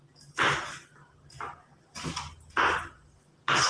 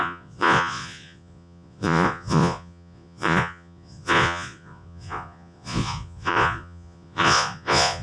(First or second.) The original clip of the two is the first